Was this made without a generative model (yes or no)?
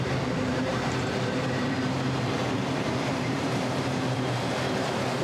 no